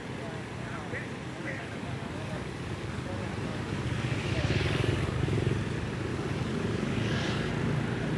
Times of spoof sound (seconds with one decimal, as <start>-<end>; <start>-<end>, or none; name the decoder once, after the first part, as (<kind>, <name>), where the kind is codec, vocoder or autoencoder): 1.4-3.1 (codec, DAC); 3.5-5.5; 6.1-7.5